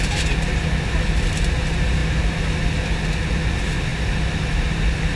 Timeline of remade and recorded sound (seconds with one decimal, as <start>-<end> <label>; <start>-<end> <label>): 0.0-5.2 recorded

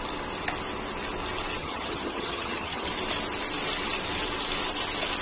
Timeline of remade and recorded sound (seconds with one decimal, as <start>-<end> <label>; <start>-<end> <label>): 0.0-1.6 recorded; 1.6-2.9 remade; 2.9-5.2 recorded

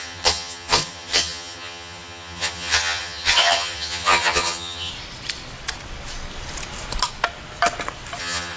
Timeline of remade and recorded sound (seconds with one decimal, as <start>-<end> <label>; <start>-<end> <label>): 0.0-4.9 remade; 4.9-8.2 recorded; 8.2-8.6 remade

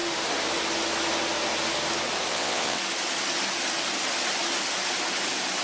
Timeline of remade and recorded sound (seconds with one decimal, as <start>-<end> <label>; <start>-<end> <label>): 0.0-2.3 recorded; 2.3-2.8 remade; 2.8-5.6 recorded

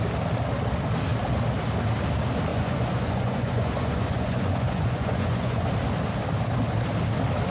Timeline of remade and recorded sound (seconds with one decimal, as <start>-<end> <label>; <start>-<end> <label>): 0.0-2.5 recorded; 2.5-5.7 remade; 5.7-7.5 recorded

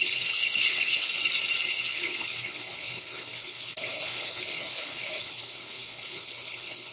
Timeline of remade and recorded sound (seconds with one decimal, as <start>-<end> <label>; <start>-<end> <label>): 0.0-1.1 remade; 1.1-1.7 recorded; 1.7-6.9 remade

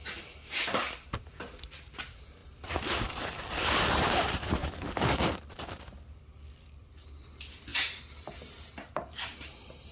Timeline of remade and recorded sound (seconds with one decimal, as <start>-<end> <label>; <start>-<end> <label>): 0.0-0.8 remade; 0.8-1.3 recorded; 1.3-4.6 remade; 4.6-5.3 recorded; 5.3-7.7 remade; 7.7-9.9 recorded

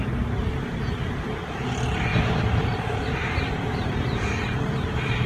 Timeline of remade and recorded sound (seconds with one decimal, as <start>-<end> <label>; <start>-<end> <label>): 0.0-2.1 recorded; 2.1-5.3 remade